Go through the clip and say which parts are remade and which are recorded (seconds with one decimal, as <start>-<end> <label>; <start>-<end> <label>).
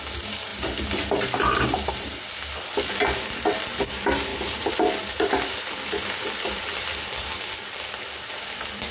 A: 0.0-4.3 recorded; 4.3-7.1 remade; 7.1-8.9 recorded